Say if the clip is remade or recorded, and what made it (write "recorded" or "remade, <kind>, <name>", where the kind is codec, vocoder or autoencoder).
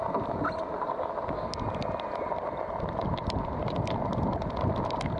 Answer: recorded